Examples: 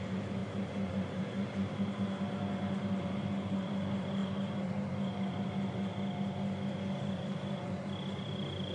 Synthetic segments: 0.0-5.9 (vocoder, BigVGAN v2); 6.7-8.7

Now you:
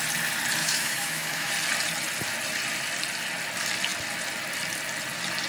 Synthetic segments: 0.6-1.5 (autoencoder, DAC-VAE)

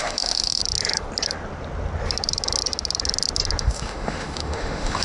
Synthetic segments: 0.0-0.6 (autoencoder, DAC-VAE); 3.6-5.0

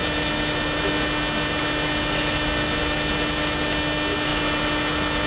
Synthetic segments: none